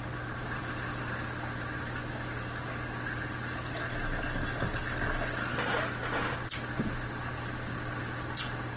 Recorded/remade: recorded